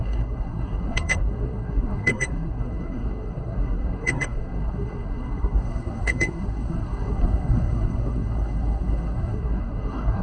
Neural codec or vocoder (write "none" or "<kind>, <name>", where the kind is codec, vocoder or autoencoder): codec, SNAC